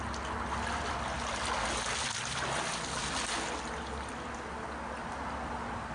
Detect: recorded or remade recorded